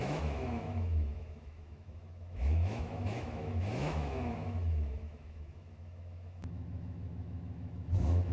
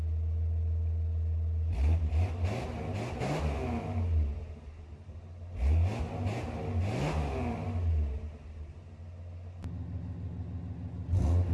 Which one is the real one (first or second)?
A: second